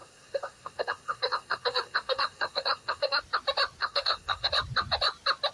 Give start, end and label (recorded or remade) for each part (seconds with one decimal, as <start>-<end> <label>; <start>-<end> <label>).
0.0-3.2 remade; 3.2-3.8 recorded; 3.8-4.5 remade; 4.5-5.5 recorded